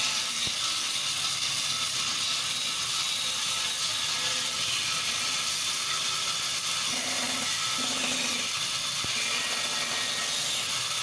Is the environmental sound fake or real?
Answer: real